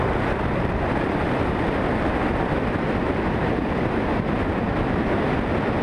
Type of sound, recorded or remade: recorded